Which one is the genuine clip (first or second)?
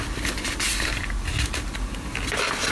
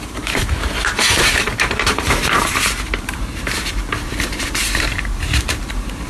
first